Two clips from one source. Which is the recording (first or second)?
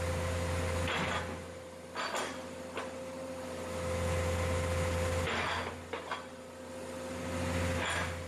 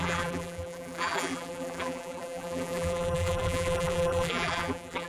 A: first